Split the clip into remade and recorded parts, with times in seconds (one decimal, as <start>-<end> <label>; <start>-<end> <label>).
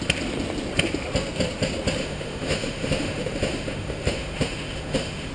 0.0-2.0 recorded; 2.0-5.3 remade